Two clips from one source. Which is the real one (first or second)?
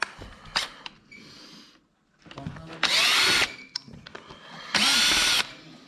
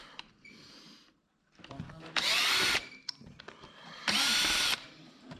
first